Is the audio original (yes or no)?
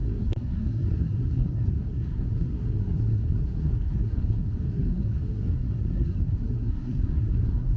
no